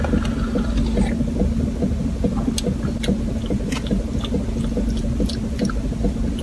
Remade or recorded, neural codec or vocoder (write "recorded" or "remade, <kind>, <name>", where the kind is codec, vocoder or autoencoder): recorded